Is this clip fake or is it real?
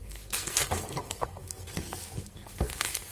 fake